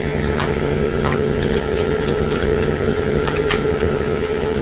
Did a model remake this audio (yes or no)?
yes